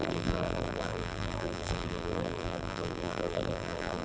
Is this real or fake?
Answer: fake